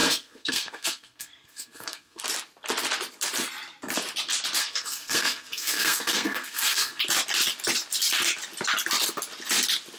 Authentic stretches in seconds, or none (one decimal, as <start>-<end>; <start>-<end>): 2.2-4.6; 7.0-10.0